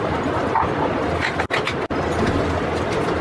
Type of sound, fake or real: real